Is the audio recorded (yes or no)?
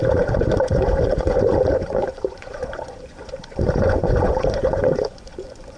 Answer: no